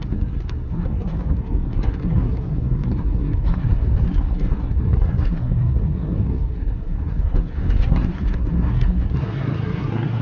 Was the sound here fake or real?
fake